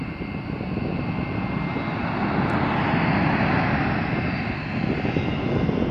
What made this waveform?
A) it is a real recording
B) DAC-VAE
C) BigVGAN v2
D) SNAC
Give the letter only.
A